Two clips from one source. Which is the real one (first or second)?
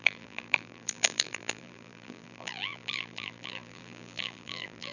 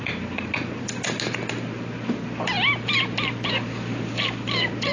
second